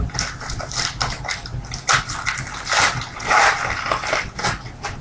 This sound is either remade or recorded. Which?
recorded